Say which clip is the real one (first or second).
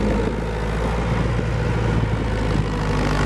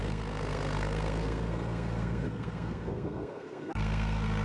first